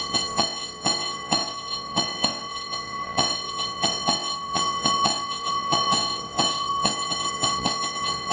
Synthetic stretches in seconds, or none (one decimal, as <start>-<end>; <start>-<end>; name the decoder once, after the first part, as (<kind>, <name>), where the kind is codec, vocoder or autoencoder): 0.0-8.3 (vocoder, WaveNeXt)